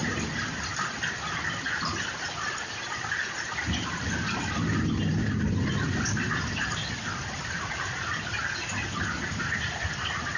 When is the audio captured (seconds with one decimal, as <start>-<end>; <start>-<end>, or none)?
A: 0.0-10.4